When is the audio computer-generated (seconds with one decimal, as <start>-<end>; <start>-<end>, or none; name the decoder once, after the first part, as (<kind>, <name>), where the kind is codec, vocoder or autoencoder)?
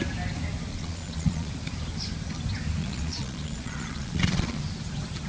0.7-1.5 (vocoder, Vocos); 2.8-4.6